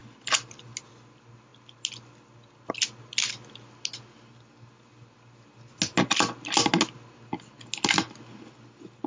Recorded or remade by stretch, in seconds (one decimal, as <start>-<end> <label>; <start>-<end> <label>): 0.0-9.1 recorded